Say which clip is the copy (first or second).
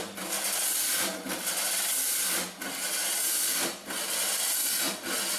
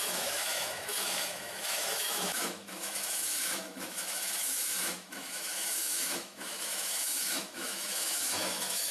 second